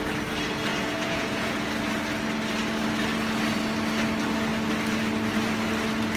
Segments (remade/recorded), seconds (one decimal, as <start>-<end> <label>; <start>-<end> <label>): 0.0-0.7 recorded; 0.7-1.7 remade; 1.7-6.2 recorded